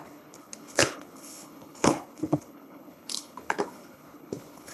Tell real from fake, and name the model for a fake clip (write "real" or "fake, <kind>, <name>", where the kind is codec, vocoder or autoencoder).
fake, codec, HILCodec